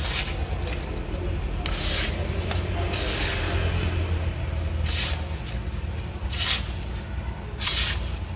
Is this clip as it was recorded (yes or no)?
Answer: yes